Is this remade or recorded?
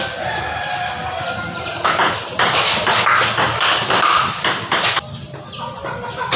remade